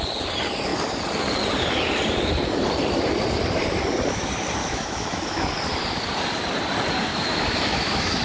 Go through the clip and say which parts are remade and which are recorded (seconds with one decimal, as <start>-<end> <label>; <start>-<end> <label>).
0.0-4.6 recorded; 4.6-5.5 remade; 5.5-7.1 recorded; 7.1-8.2 remade